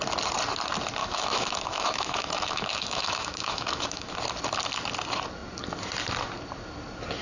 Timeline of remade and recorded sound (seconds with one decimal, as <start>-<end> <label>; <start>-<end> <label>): 0.0-1.0 recorded; 1.0-4.1 remade; 4.1-7.2 recorded